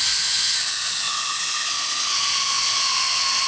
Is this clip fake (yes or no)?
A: yes